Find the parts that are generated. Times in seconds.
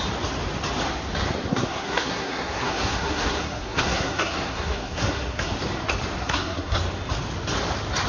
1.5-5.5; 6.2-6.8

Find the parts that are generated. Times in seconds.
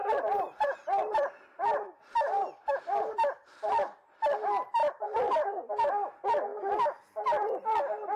0.0-2.7; 4.8-5.7